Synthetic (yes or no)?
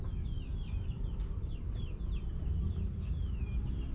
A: no